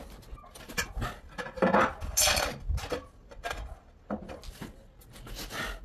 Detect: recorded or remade recorded